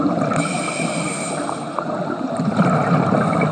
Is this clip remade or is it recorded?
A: recorded